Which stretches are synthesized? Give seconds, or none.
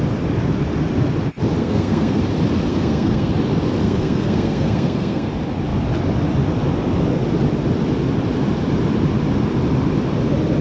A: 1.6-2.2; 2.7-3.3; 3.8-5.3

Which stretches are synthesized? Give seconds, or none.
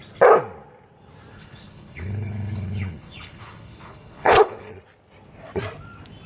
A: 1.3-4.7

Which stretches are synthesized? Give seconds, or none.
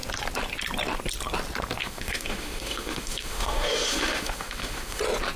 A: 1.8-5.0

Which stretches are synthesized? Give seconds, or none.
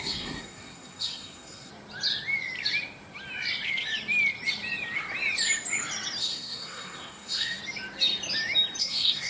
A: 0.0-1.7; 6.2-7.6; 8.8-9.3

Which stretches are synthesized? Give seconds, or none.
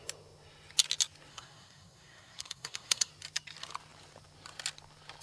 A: 1.3-3.1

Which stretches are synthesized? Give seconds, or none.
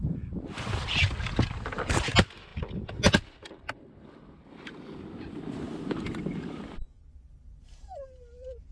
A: none